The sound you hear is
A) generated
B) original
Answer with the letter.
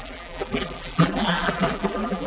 A